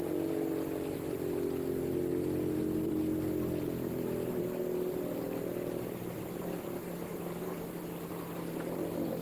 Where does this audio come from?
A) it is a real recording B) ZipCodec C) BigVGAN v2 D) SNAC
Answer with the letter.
A